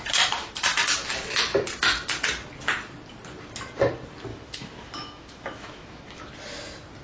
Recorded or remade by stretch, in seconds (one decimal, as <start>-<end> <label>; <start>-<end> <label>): 0.0-4.3 recorded; 4.3-6.3 remade; 6.3-7.0 recorded